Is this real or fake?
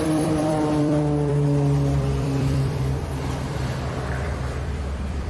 fake